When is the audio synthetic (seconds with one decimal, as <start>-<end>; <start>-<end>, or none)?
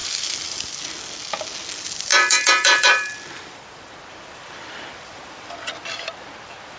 0.0-0.8; 2.1-5.7